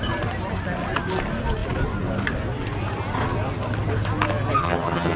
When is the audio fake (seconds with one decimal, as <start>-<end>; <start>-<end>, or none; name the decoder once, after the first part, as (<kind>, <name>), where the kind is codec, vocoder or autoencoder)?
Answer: 4.6-5.2 (vocoder, HiFi-GAN)